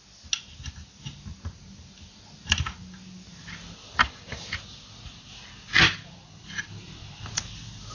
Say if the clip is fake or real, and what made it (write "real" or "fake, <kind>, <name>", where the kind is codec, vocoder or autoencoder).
real